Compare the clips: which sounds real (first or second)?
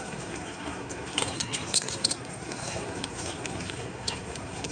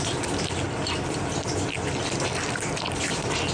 second